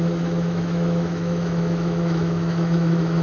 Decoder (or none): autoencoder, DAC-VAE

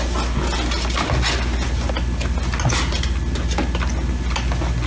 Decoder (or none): none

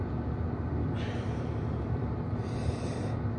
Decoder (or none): none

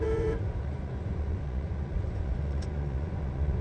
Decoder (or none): vocoder, Vocos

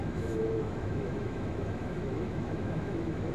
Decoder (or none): autoencoder, DAC-VAE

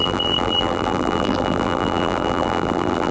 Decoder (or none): vocoder, BigVGAN v2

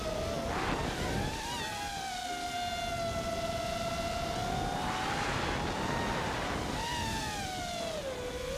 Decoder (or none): none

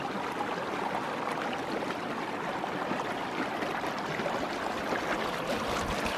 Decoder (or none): none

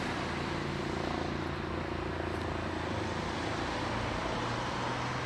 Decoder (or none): none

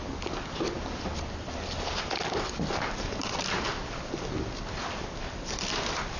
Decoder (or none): none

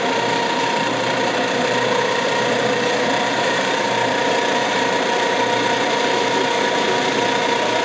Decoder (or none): vocoder, BigVGAN v2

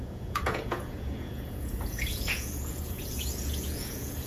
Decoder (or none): vocoder, Vocos